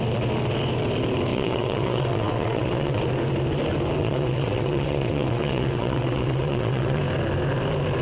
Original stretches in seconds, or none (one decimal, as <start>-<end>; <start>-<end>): 0.0-1.3; 3.0-4.0; 7.0-8.0